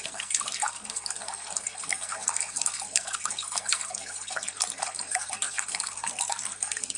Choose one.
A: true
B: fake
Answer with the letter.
B